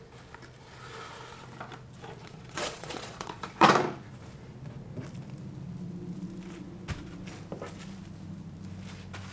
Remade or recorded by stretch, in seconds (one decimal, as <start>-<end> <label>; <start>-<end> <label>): 0.0-2.2 recorded; 2.2-3.7 remade; 3.7-9.3 recorded